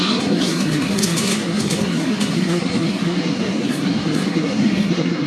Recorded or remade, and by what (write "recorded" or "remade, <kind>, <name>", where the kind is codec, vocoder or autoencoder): remade, codec, SNAC